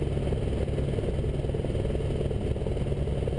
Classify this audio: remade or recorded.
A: recorded